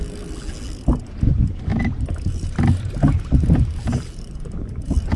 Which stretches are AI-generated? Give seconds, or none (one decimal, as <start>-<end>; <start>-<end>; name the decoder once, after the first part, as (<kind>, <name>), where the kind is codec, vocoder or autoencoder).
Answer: 1.7-4.8 (vocoder, BigVGAN v2)